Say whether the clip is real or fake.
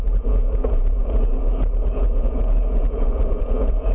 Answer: fake